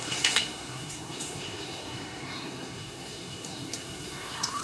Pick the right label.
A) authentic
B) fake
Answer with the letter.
B